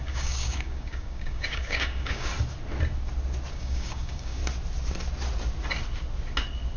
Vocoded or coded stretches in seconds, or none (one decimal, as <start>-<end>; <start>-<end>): 0.0-2.3; 3.5-4.4